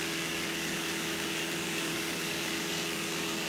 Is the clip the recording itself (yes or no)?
no